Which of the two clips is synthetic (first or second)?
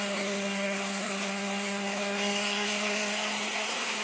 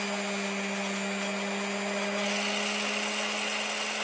first